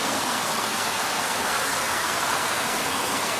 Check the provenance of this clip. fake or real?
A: fake